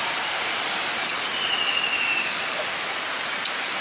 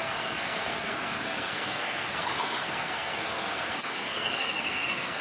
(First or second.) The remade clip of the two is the second